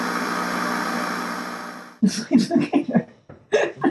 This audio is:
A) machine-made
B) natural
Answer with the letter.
B